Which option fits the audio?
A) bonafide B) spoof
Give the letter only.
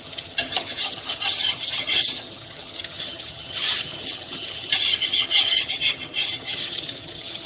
B